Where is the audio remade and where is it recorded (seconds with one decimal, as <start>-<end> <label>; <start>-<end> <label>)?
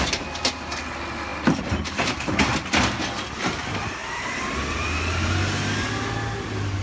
0.0-6.8 recorded